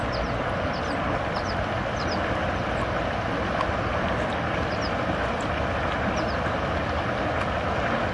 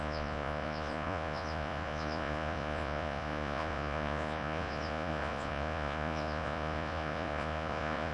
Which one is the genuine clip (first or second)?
first